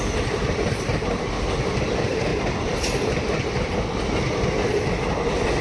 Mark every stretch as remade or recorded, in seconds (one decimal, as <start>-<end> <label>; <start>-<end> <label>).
0.0-5.6 recorded